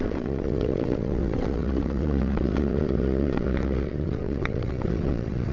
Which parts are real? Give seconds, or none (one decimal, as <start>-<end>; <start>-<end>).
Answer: none